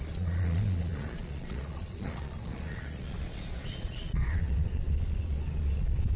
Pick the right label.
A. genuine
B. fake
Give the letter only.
B